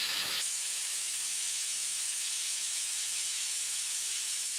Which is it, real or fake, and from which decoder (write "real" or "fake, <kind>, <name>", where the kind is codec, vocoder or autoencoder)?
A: fake, autoencoder, DAC-VAE